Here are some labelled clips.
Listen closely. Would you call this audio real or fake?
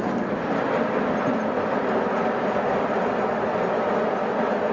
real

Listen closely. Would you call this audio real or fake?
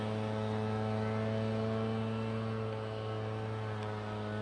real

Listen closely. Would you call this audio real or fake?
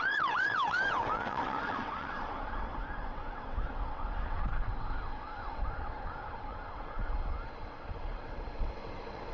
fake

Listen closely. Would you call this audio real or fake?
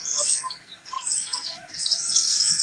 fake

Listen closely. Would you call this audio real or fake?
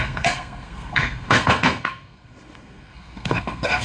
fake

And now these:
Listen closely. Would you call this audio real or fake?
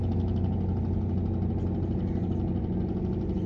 real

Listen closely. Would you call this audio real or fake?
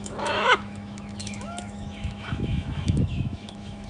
fake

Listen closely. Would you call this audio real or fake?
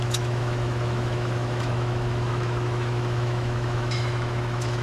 fake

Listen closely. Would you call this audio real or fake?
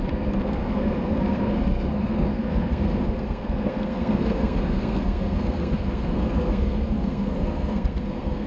fake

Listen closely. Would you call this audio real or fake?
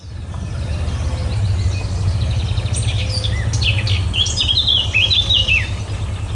real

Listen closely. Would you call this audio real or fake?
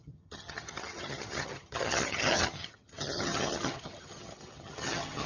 fake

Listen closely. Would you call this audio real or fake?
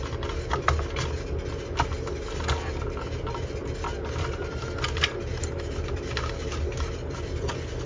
real